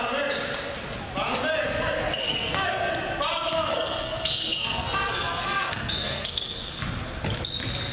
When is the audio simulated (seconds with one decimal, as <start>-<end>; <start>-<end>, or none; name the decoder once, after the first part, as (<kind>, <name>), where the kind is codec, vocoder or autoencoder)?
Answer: 2.2-2.9 (codec, SNAC); 3.7-6.8